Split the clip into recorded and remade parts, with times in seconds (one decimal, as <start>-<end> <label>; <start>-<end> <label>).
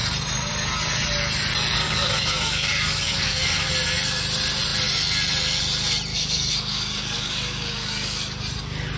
0.0-1.8 recorded; 1.8-3.7 remade; 3.7-6.1 recorded; 6.1-8.4 remade; 8.4-9.0 recorded